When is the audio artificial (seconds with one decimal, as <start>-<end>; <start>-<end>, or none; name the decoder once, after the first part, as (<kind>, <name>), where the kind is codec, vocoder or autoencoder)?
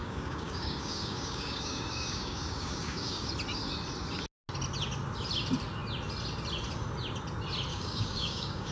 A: 0.0-3.3 (codec, DAC); 7.7-8.7